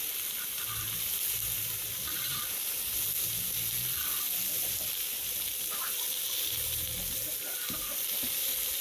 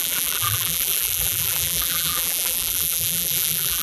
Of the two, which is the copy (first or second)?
second